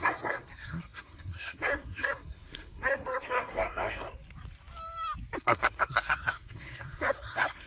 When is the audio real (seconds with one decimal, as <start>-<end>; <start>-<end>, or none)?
4.1-5.4